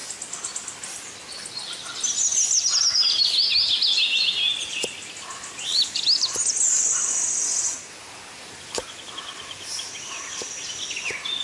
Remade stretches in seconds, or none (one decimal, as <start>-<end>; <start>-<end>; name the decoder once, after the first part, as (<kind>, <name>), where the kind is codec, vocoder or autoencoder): none